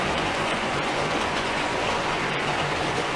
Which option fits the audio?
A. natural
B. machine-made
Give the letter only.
B